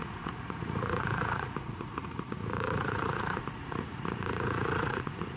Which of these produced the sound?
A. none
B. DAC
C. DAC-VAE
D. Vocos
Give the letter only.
D